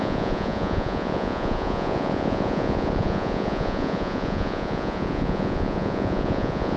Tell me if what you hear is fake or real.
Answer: fake